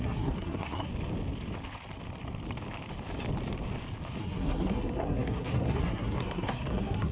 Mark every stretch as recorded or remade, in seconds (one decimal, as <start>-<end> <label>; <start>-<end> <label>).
0.0-0.9 remade; 0.9-4.2 recorded; 4.2-7.1 remade